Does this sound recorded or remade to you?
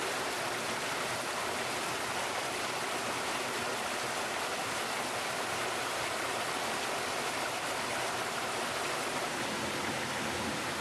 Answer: recorded